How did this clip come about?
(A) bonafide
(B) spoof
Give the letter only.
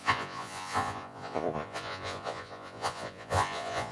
B